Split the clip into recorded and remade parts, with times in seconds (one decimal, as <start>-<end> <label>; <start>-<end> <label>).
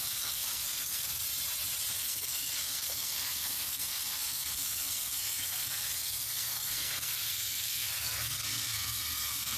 0.0-1.2 remade; 1.2-1.9 recorded; 1.9-9.6 remade